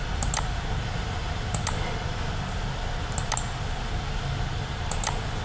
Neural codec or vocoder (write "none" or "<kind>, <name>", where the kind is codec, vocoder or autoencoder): none